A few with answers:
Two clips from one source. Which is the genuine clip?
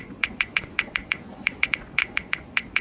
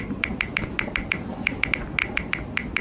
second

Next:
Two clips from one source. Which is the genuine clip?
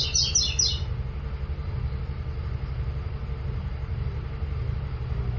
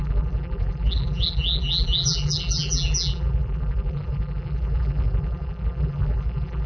first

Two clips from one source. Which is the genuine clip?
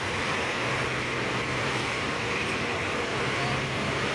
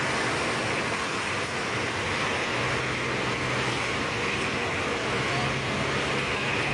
second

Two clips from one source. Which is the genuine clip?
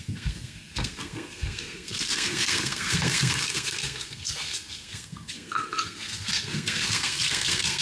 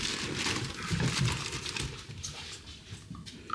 second